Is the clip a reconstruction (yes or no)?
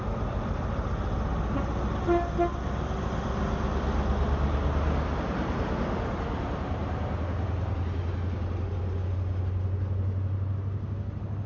no